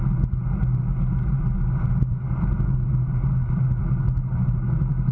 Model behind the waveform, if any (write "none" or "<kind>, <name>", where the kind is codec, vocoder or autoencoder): none